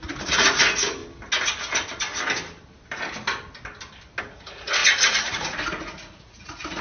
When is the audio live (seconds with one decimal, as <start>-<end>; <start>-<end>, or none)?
1.0-4.2